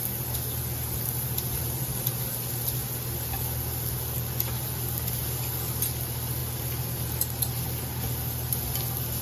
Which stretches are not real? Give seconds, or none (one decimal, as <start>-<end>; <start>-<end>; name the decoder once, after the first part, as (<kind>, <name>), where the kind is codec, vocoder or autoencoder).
none